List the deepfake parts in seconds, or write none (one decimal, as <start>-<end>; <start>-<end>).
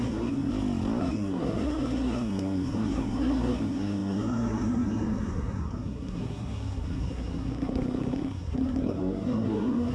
0.0-0.5; 1.0-9.9